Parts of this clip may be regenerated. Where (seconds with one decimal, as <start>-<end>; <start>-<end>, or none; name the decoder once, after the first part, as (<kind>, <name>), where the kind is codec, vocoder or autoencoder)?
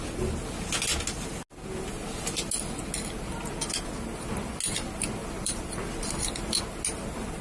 5.2-6.6 (vocoder, BigVGAN v2)